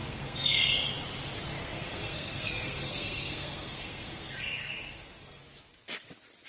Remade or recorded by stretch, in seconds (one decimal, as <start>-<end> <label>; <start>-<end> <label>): 0.0-0.7 remade; 0.7-1.5 recorded; 1.5-5.4 remade; 5.4-6.5 recorded